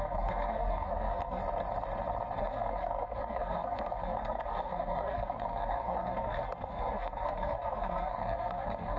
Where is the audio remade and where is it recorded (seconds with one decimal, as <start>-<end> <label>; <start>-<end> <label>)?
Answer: 0.0-1.4 remade; 1.4-2.4 recorded; 2.4-9.0 remade